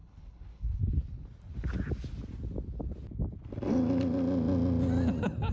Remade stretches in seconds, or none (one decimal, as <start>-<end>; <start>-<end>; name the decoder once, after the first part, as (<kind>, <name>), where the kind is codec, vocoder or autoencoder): 0.0-0.8 (codec, HILCodec)